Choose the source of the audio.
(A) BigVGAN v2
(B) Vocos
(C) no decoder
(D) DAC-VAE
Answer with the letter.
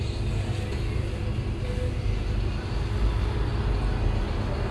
C